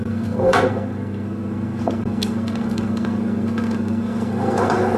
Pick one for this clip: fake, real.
fake